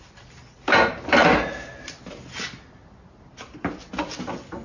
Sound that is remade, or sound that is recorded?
recorded